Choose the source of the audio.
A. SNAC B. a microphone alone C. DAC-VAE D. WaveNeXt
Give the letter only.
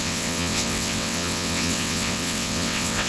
D